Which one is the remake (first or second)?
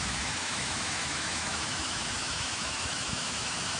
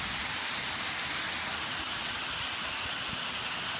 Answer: first